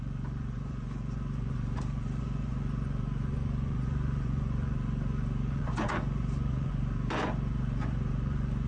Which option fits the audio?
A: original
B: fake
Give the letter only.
B